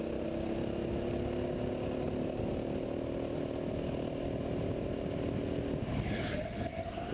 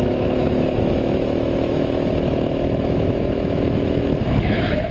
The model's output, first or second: second